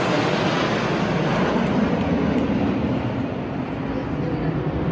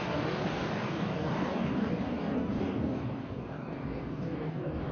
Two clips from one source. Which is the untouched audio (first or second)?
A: first